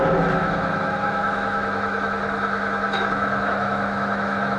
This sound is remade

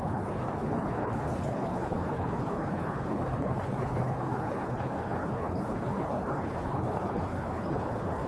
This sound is remade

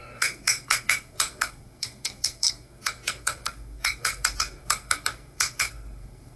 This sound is remade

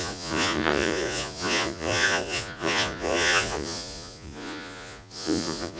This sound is remade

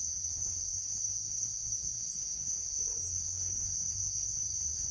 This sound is remade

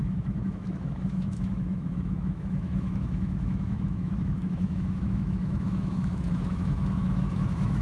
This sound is remade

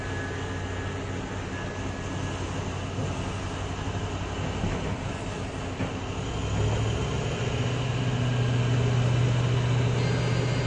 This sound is recorded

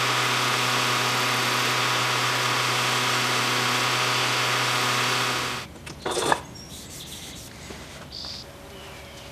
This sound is recorded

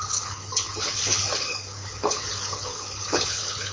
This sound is remade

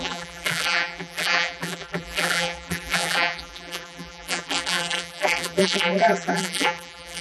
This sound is remade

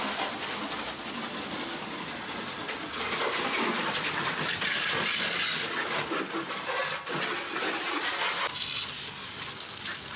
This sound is recorded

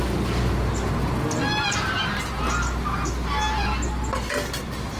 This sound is recorded